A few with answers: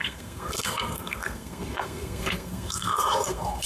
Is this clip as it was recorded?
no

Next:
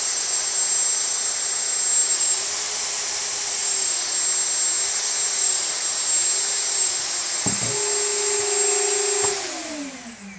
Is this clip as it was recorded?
yes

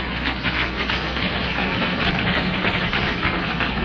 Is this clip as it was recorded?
no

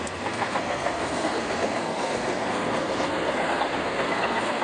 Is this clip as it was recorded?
no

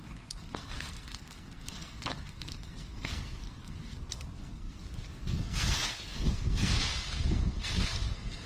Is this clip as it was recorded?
no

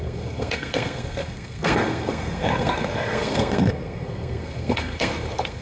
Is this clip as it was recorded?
no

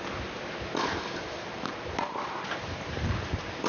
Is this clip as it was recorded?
yes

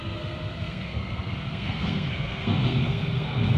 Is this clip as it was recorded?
no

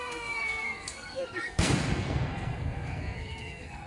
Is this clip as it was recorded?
no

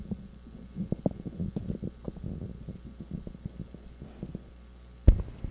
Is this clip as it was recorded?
yes